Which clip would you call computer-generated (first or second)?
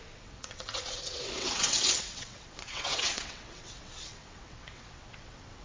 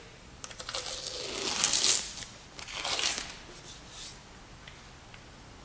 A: first